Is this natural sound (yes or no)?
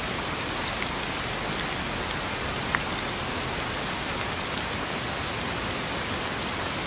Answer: yes